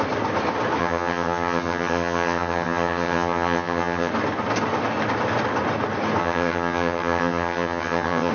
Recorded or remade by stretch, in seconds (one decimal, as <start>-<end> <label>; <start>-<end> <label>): 0.0-0.8 recorded; 0.8-4.1 remade; 4.1-6.2 recorded; 6.2-8.3 remade